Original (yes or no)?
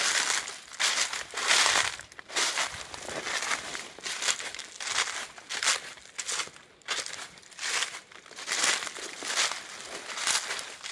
yes